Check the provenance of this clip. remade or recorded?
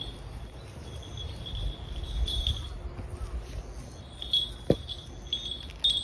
recorded